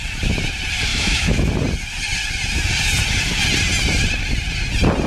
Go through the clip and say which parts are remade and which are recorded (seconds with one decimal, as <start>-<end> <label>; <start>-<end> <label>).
0.0-0.9 recorded; 0.9-1.5 remade; 1.5-5.1 recorded